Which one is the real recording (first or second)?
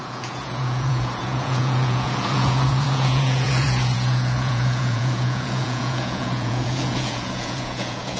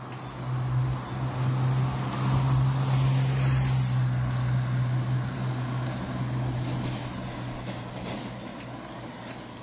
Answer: second